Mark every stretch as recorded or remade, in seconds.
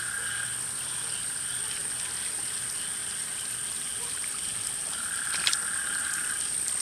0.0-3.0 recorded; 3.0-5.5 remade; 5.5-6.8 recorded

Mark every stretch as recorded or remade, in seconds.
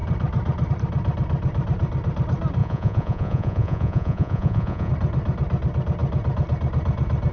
0.0-2.6 recorded; 2.6-4.9 remade; 4.9-7.3 recorded